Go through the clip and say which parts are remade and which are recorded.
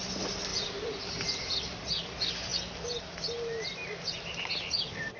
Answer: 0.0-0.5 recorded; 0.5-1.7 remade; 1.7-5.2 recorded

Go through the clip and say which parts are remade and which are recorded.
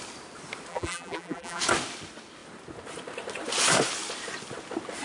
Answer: 0.0-0.7 recorded; 0.7-1.6 remade; 1.6-5.0 recorded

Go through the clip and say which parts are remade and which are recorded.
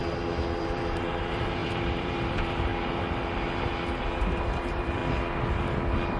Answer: 0.0-0.6 recorded; 0.6-2.7 remade; 2.7-4.0 recorded; 4.0-5.0 remade; 5.0-6.2 recorded